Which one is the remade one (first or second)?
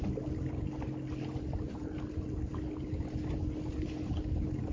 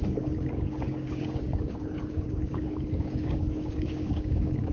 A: second